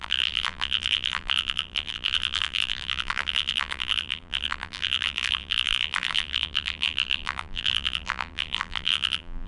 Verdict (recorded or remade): remade